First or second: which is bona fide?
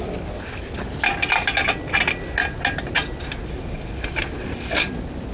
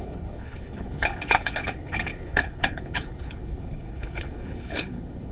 first